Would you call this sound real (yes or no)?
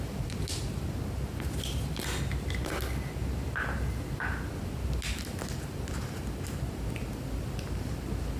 yes